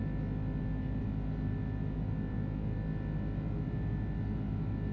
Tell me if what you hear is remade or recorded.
recorded